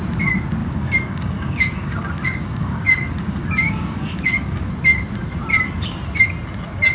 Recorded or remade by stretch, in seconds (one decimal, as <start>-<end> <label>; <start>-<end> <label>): 0.0-0.6 recorded; 0.6-4.7 remade; 4.7-6.9 recorded